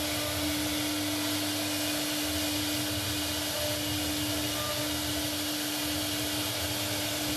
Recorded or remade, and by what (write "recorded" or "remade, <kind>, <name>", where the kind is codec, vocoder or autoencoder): recorded